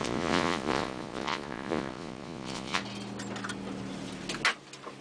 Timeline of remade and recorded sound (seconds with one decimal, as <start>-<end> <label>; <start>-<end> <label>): 0.0-2.8 remade; 2.8-5.0 recorded